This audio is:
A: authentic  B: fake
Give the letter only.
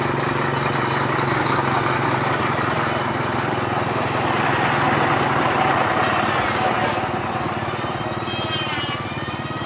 B